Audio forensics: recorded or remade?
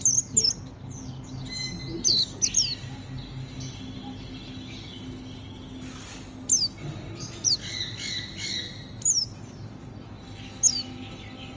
recorded